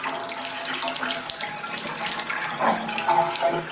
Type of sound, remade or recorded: recorded